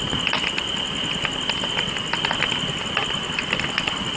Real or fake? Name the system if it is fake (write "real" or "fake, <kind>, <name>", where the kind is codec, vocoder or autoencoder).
real